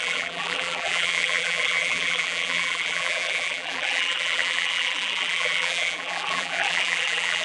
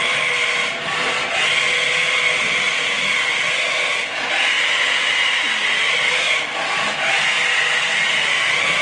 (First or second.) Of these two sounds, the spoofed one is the first